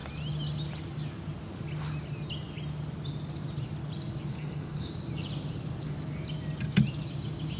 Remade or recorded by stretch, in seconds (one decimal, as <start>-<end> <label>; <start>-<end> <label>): 0.0-4.3 recorded; 4.3-4.9 remade; 4.9-7.6 recorded